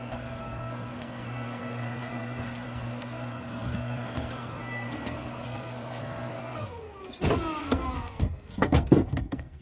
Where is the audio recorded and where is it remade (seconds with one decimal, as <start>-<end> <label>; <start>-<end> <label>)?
0.0-7.0 remade; 7.0-7.6 recorded; 7.6-9.6 remade